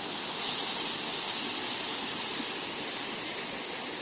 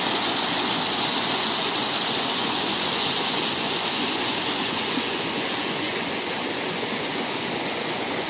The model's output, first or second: second